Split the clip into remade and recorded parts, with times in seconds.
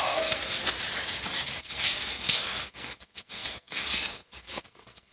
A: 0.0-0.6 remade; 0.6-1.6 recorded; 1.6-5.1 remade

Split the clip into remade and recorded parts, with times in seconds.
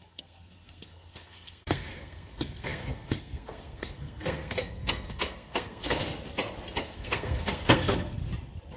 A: 0.0-6.0 remade; 6.0-6.8 recorded; 6.8-8.2 remade; 8.2-8.8 recorded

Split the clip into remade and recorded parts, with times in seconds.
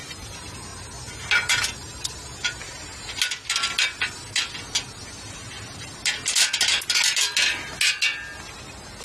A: 0.0-9.0 recorded